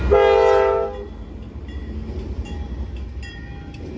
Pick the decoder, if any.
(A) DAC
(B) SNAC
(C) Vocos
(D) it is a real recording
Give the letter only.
D